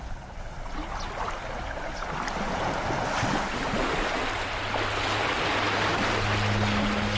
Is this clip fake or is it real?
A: real